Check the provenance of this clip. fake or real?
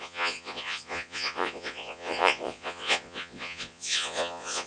fake